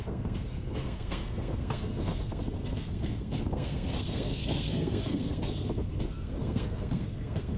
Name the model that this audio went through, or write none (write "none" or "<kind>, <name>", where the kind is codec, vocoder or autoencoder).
codec, SNAC